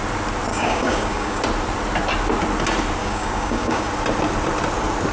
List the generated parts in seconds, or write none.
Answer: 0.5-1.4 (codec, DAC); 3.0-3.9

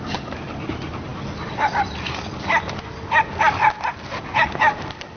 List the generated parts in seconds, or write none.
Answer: none